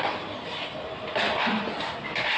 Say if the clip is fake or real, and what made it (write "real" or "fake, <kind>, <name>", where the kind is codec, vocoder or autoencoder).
real